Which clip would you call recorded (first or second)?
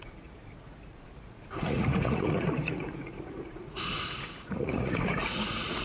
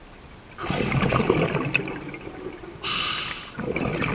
second